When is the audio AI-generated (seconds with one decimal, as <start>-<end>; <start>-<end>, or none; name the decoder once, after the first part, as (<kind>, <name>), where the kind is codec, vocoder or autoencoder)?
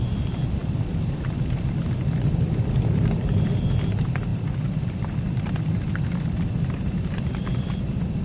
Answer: 0.6-3.7 (vocoder, BigVGAN v2); 4.3-7.5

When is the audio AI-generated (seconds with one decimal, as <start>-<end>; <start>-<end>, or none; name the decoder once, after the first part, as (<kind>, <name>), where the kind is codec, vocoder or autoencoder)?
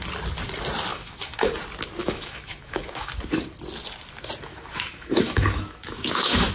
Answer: 0.9-1.5 (autoencoder, DAC-VAE); 2.0-3.1; 4.5-6.5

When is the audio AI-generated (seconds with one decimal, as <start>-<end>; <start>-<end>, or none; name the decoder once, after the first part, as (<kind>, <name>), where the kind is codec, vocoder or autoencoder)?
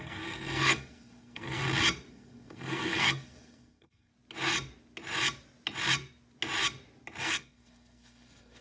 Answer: 0.0-1.6 (codec, SNAC); 2.1-4.1; 7.2-8.6